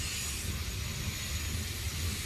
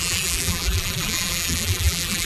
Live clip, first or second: first